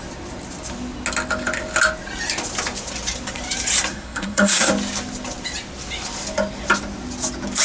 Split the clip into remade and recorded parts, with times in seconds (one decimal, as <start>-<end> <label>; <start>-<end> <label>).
0.0-3.9 recorded; 3.9-4.7 remade; 4.7-7.6 recorded

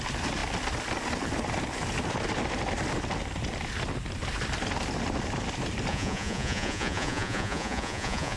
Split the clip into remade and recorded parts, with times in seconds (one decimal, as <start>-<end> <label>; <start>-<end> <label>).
0.0-5.9 recorded; 5.9-8.4 remade

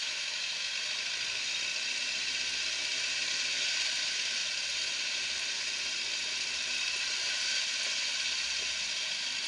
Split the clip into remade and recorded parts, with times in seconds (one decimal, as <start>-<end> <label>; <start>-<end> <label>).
0.0-0.7 remade; 0.7-9.5 recorded